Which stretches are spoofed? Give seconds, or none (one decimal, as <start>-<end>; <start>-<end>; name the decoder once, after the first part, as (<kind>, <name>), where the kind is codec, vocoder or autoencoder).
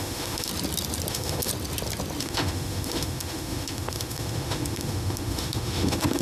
0.0-0.5 (autoencoder, DAC-VAE); 1.1-1.5; 2.2-6.2